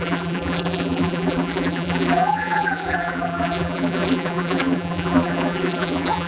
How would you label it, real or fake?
fake